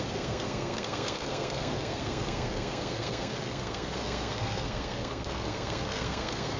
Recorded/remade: remade